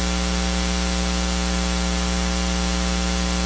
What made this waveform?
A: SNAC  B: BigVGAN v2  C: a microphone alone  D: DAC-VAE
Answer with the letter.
C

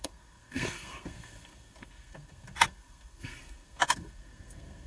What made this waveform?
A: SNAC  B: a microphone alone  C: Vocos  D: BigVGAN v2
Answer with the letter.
A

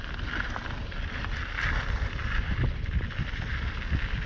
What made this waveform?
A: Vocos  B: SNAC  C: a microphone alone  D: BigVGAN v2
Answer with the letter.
C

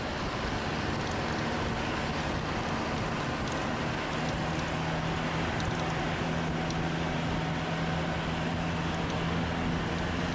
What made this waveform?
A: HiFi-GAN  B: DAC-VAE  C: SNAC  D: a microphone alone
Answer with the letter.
D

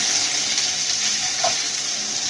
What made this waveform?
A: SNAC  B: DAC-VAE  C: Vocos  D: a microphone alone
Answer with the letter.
D